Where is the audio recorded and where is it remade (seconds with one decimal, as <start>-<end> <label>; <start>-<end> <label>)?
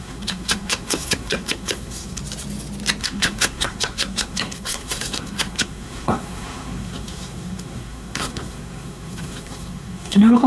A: 0.0-2.2 remade; 2.2-3.0 recorded; 3.0-10.5 remade